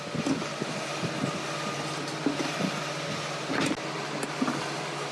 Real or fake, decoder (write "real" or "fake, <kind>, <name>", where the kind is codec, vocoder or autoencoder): real